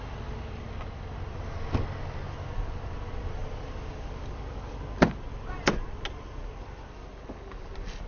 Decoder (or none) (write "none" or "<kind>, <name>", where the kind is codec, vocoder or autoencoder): none